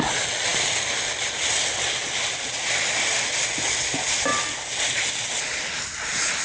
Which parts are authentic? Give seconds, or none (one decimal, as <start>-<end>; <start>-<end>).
0.0-6.4